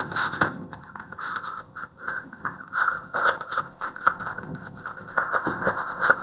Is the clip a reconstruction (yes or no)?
yes